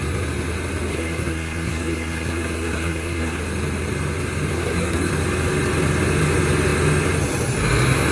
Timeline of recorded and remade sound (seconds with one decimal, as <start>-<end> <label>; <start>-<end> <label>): 0.0-0.9 recorded; 0.9-3.4 remade; 3.4-4.5 recorded; 4.5-5.1 remade; 5.1-8.1 recorded